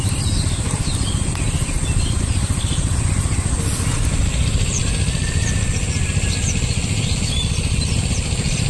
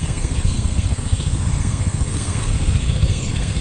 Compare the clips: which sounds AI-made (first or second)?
second